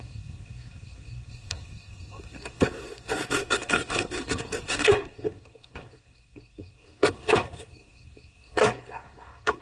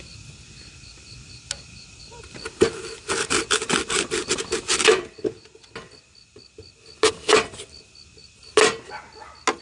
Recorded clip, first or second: second